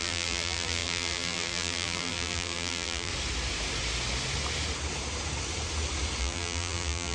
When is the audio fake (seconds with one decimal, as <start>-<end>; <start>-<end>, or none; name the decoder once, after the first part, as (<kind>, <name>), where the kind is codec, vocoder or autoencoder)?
0.0-3.1 (vocoder, BigVGAN v2); 6.2-7.1